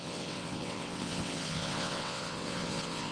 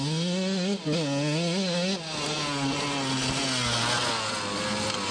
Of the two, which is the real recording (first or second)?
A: second